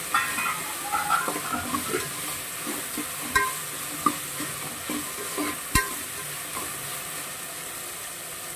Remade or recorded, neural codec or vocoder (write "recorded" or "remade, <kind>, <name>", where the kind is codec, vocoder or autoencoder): recorded